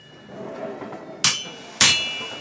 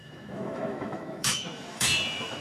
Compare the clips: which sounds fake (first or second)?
second